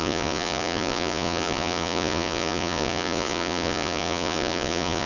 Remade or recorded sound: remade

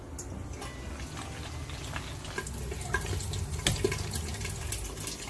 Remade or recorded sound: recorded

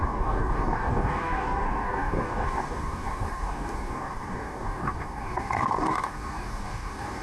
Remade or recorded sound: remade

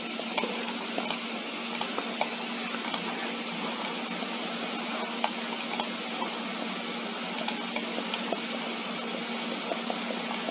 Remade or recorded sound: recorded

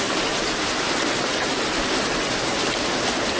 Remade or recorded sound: recorded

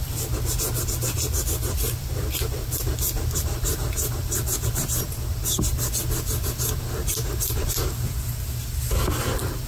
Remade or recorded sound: recorded